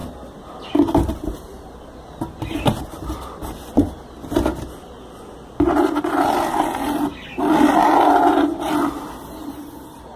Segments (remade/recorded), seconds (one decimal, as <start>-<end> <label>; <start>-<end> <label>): 0.0-0.5 remade; 0.5-7.1 recorded; 7.1-9.5 remade; 9.5-10.2 recorded